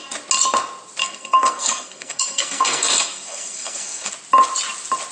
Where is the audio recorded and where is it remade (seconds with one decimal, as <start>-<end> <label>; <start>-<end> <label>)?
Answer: 0.0-1.0 recorded; 1.0-4.1 remade; 4.1-5.1 recorded